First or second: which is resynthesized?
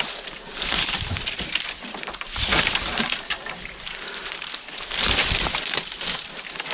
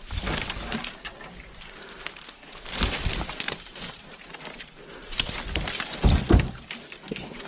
first